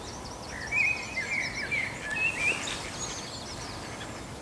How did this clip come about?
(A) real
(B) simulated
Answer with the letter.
A